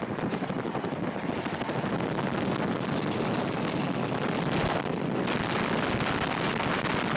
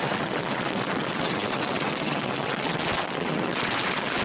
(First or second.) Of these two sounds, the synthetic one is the second